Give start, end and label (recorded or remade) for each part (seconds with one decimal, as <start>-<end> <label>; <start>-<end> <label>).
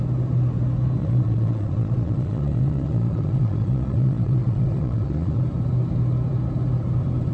0.0-1.0 recorded; 1.0-5.4 remade; 5.4-7.3 recorded